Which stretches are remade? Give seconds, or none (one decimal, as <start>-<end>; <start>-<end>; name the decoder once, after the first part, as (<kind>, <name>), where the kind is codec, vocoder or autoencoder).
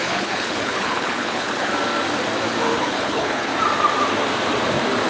0.0-1.7 (codec, HILCodec); 2.8-3.5